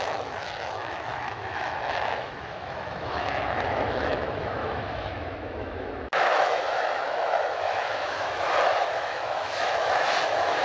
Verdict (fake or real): fake